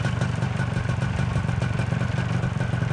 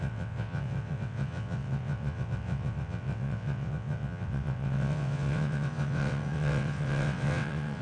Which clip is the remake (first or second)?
second